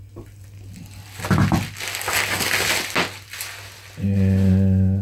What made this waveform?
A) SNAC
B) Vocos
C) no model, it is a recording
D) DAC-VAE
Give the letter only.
C